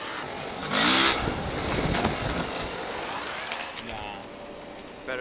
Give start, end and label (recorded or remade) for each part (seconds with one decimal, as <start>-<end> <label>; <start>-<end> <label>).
0.0-5.2 recorded